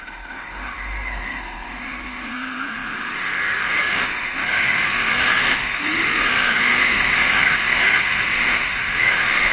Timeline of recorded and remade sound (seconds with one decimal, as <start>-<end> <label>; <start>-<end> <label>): 0.0-9.5 remade